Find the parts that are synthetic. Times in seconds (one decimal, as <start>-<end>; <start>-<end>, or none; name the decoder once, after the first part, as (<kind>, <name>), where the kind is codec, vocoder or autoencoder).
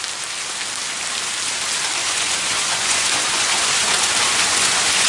2.0-5.1 (vocoder, Vocos)